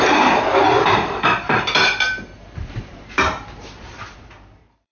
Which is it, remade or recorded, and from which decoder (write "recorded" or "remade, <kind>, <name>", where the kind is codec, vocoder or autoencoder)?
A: remade, vocoder, BigVGAN v2